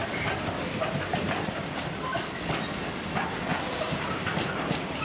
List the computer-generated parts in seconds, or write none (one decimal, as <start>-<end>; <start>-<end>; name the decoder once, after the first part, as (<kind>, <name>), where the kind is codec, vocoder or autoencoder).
3.5-5.0 (vocoder, BigVGAN v2)